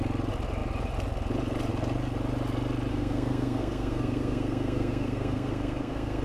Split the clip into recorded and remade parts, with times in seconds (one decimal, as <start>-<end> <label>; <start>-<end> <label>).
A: 0.0-2.9 recorded; 2.9-6.2 remade